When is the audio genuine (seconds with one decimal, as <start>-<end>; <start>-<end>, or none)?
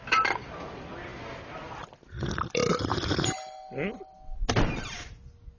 0.0-5.6